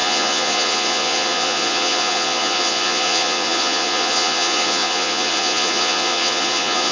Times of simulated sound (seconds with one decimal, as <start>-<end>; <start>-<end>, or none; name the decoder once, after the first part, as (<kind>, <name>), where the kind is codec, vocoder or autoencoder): 0.0-6.9 (vocoder, Vocos)